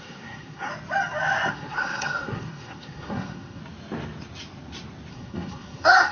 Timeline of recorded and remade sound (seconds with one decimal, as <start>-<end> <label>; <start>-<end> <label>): 0.0-0.7 remade; 0.7-1.5 recorded; 1.5-3.6 remade; 3.6-5.1 recorded; 5.1-6.1 remade